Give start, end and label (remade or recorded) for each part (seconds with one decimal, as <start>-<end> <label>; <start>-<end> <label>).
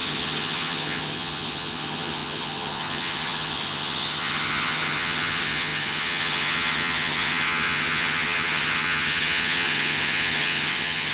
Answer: 0.0-11.1 remade